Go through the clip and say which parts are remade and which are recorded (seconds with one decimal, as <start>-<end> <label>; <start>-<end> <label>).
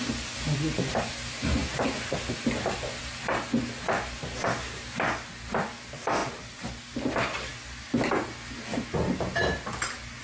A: 0.0-10.2 recorded